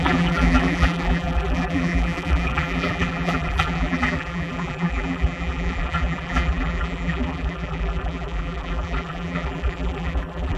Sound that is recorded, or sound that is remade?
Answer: remade